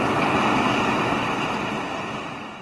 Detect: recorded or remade recorded